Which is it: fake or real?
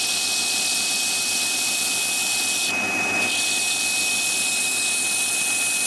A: real